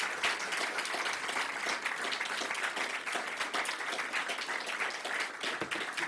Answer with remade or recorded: recorded